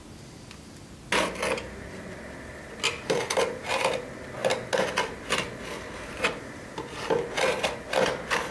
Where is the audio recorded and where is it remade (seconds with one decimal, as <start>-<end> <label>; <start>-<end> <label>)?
0.0-8.5 recorded